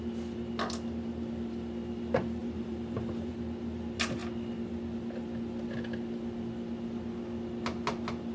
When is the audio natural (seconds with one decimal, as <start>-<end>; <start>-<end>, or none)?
0.0-2.4; 3.3-8.3